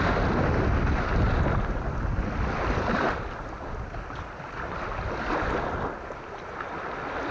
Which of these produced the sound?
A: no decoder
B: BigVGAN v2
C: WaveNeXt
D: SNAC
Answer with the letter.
A